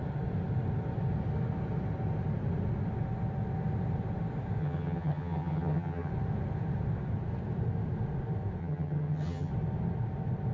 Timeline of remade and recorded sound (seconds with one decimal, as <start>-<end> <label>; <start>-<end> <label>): 0.0-4.6 recorded; 4.6-6.1 remade; 6.1-8.6 recorded; 8.6-9.5 remade; 9.5-10.5 recorded